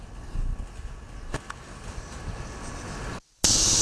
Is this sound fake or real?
real